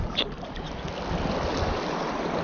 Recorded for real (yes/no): yes